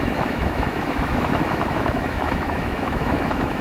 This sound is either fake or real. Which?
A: fake